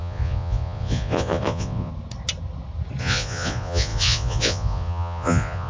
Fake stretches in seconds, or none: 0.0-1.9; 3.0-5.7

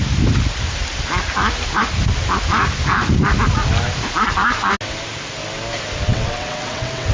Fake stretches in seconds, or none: 6.1-7.1

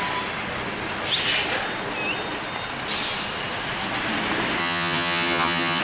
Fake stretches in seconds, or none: 4.6-5.8

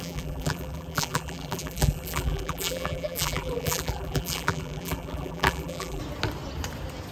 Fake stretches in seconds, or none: 0.0-6.0

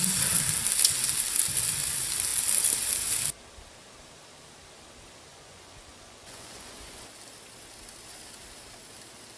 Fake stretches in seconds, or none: 5.3-7.0

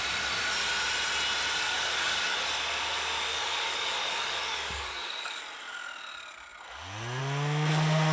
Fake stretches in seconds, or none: 1.6-2.5; 3.3-5.4